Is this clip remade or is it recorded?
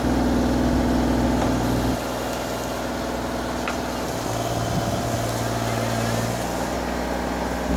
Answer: recorded